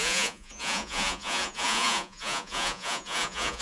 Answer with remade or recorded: remade